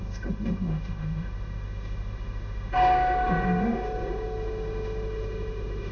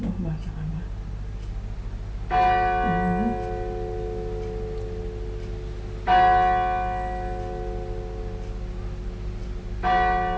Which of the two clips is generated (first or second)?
first